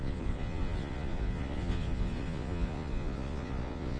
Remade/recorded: remade